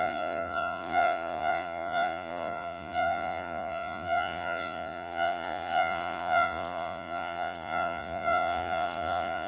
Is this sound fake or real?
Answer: fake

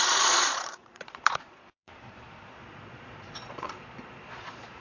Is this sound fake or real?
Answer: fake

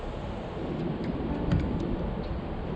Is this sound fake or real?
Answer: real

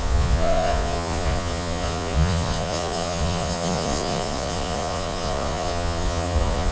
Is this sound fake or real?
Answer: fake